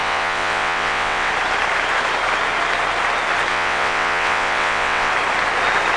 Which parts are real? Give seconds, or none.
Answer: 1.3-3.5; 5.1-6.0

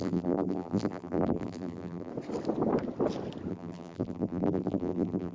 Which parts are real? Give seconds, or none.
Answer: 2.1-3.5

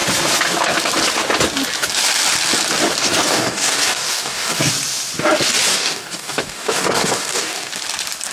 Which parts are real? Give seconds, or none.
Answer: 0.0-3.0; 4.7-5.7; 7.7-8.3

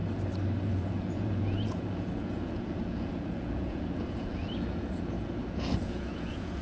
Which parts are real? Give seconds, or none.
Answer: 0.0-0.6